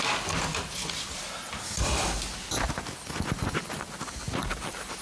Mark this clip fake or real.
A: fake